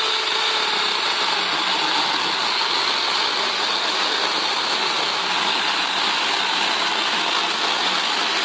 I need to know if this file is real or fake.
real